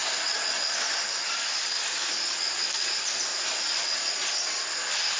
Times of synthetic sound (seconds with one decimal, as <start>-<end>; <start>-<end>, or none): none